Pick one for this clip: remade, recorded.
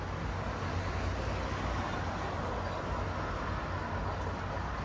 recorded